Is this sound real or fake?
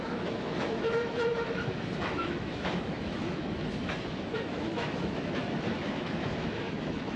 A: fake